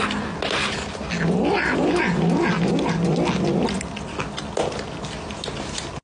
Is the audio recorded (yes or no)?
yes